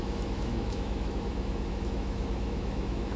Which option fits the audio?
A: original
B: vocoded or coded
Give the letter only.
B